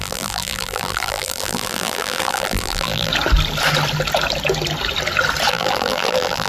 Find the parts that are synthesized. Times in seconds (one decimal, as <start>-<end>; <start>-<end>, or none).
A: 0.0-3.1; 5.5-6.5